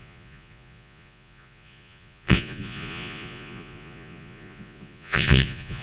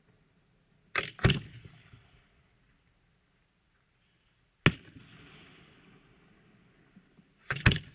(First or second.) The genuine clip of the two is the second